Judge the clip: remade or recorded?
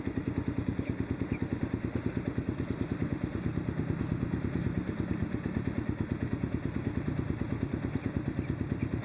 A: recorded